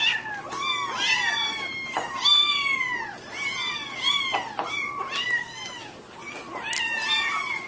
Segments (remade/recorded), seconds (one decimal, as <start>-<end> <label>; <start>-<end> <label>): 0.0-7.7 recorded